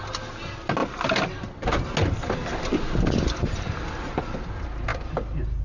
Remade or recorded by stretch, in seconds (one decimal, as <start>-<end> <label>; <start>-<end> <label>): 0.0-5.6 recorded